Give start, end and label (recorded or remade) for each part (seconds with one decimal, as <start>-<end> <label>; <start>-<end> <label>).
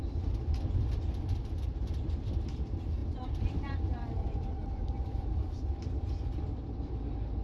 0.0-3.0 recorded; 3.0-6.9 remade; 6.9-7.4 recorded